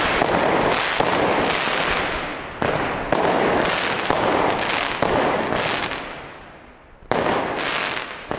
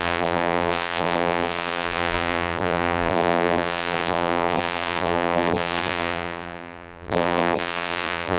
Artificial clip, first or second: second